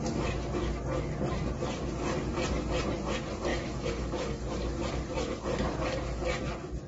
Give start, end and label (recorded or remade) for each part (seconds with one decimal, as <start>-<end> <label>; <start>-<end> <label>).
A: 0.0-3.5 recorded; 3.5-4.4 remade; 4.4-6.9 recorded